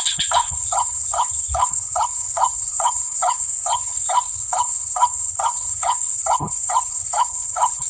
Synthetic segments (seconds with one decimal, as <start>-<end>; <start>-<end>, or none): 0.0-7.9